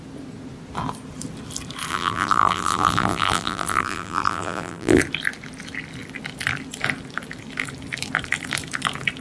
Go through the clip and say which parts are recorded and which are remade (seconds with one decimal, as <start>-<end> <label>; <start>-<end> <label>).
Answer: 0.0-1.9 recorded; 1.9-5.0 remade; 5.0-9.2 recorded